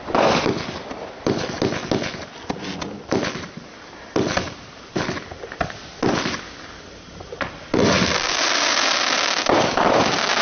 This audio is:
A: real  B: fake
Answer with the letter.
A